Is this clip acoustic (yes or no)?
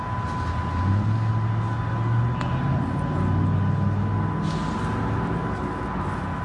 yes